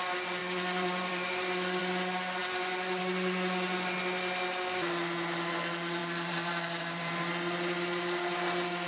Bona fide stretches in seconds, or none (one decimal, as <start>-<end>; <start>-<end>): 0.0-0.4; 1.8-2.4; 3.0-6.0; 7.2-8.9